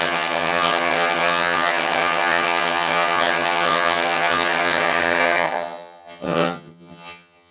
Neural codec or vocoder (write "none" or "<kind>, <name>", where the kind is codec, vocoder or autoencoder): vocoder, HiFi-GAN